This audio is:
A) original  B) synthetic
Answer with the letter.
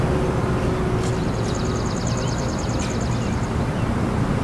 A